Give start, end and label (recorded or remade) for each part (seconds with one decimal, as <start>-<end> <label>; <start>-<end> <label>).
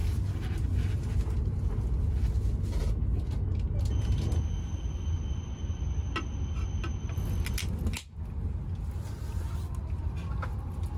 0.0-11.0 recorded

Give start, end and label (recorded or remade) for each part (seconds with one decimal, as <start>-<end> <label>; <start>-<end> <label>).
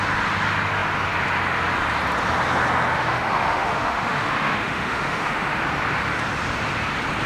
0.0-2.9 recorded; 2.9-5.6 remade; 5.6-7.3 recorded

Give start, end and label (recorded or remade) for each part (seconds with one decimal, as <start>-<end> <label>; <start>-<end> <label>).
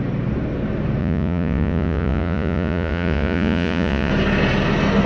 0.0-1.0 recorded; 1.0-4.1 remade; 4.1-5.1 recorded